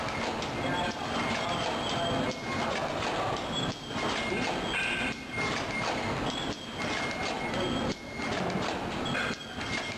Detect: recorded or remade recorded